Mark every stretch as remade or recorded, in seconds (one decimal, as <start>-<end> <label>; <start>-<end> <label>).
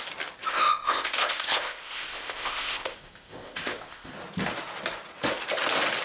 0.0-0.5 recorded; 0.5-4.1 remade; 4.1-6.0 recorded